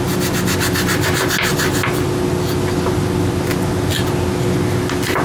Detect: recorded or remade recorded